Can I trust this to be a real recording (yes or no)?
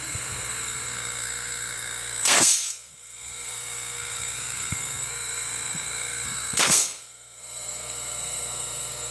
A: no